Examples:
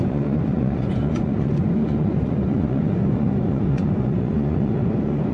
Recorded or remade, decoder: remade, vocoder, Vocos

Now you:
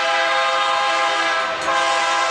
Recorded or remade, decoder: recorded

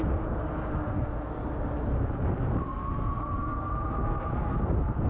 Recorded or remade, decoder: recorded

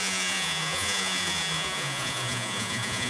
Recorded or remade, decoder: remade, vocoder, Vocos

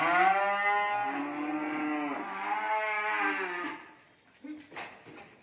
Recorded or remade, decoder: recorded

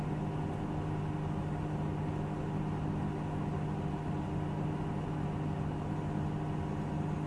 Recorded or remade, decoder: recorded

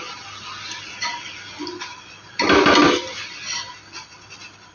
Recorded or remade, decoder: recorded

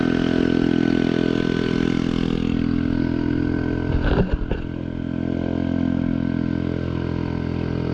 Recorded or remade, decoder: recorded